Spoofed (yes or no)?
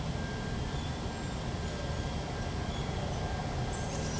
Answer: no